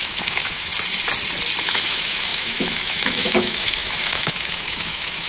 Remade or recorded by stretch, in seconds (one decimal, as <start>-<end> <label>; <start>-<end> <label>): 0.0-0.7 remade; 0.7-1.6 recorded; 1.6-5.3 remade